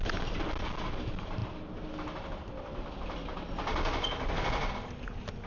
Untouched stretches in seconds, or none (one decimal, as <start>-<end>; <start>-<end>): 0.0-5.5